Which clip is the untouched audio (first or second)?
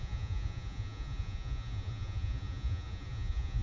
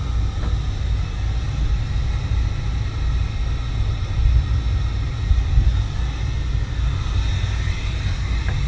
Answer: second